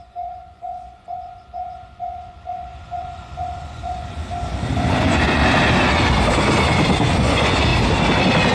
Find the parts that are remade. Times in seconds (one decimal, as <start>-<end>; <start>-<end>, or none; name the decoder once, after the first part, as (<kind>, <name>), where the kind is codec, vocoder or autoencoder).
0.0-4.2 (vocoder, Vocos); 4.9-5.4; 7.1-7.7